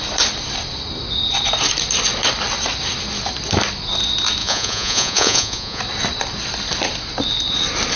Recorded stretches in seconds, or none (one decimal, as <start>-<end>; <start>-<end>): 0.0-4.4; 5.8-8.0

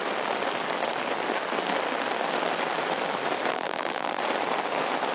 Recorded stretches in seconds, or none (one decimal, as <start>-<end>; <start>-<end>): 0.0-3.5; 4.2-5.1